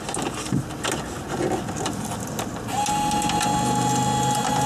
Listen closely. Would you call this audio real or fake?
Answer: real